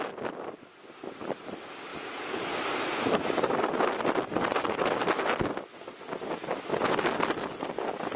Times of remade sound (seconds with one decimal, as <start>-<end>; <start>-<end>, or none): none